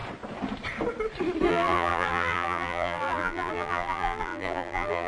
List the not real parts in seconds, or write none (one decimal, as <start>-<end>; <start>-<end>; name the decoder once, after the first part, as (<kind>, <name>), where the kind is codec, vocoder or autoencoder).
1.5-5.1 (vocoder, BigVGAN v2)